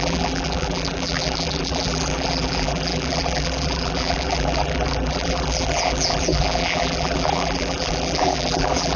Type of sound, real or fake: fake